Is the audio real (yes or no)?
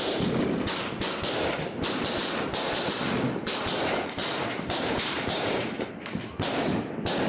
yes